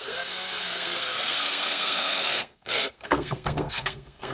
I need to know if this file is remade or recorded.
remade